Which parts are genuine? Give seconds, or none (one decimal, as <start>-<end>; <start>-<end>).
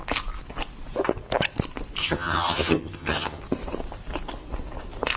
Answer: 0.0-2.0; 3.4-5.2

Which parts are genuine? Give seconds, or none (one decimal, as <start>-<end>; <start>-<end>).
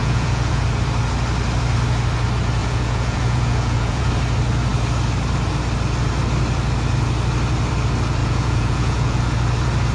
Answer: 0.6-2.6; 4.1-8.2; 9.2-9.9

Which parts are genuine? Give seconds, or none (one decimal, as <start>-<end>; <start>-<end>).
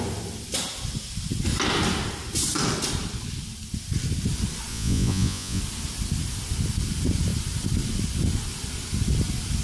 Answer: 0.0-4.7; 5.6-9.6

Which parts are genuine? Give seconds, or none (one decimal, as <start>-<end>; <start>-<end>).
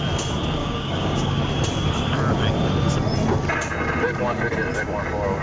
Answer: 0.0-0.6; 1.4-5.4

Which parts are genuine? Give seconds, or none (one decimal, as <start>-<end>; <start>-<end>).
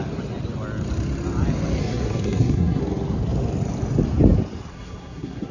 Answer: 0.0-1.8; 2.8-4.7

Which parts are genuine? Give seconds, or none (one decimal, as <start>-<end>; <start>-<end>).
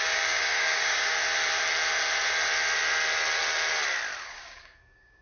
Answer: 1.2-4.2